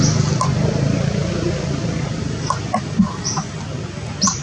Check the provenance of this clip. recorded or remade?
recorded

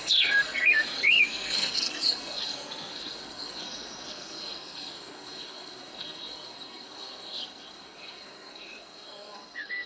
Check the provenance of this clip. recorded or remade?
remade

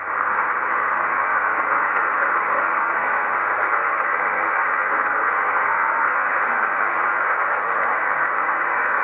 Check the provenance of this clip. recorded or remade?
remade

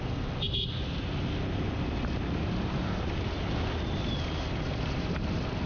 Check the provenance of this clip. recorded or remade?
recorded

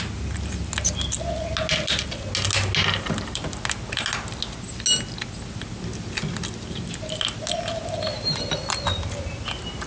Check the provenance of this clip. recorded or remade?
recorded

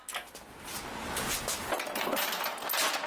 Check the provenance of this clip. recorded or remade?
recorded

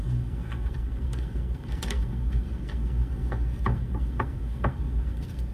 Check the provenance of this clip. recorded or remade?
remade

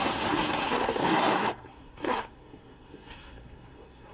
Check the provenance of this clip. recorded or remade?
remade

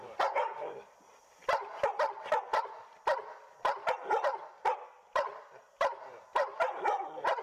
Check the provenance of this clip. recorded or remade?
recorded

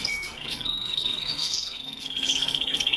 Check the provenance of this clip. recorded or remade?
remade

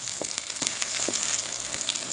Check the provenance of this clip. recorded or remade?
remade